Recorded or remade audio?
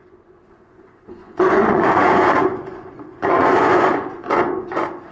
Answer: remade